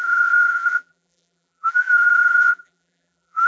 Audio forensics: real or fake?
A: fake